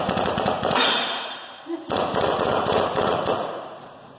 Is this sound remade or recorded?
remade